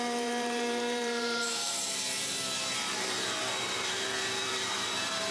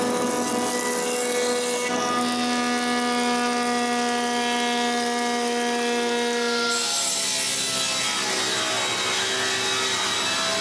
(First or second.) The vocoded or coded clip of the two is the first